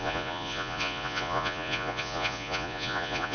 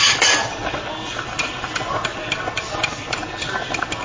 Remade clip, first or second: first